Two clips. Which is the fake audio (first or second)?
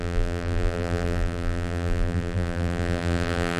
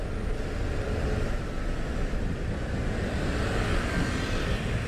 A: first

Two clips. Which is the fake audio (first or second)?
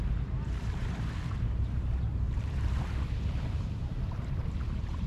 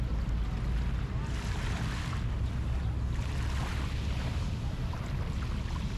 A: first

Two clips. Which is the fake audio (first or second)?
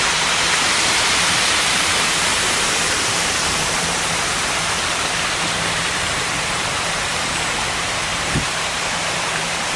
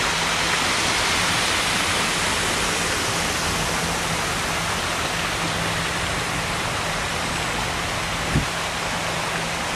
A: first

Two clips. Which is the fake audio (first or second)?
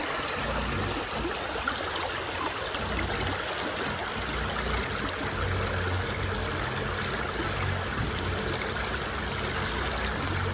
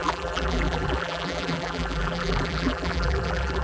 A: second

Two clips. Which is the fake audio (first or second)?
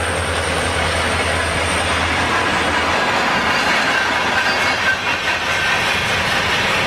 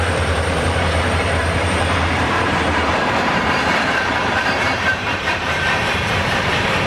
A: second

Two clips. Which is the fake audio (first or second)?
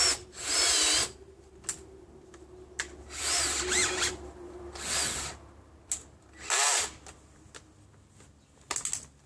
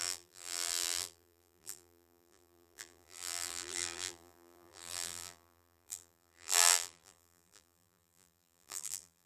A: second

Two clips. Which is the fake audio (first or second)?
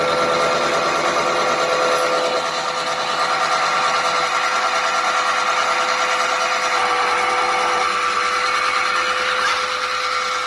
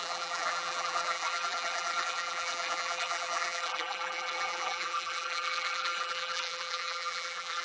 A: second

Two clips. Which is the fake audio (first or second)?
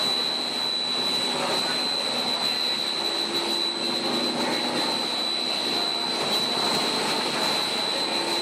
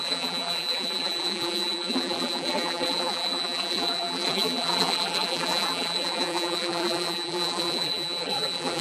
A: second